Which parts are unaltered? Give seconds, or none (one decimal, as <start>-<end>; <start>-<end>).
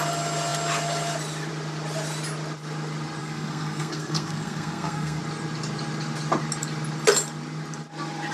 0.0-3.2; 5.2-8.3